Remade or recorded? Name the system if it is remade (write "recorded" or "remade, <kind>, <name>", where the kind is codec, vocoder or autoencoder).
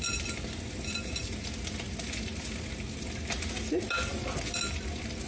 recorded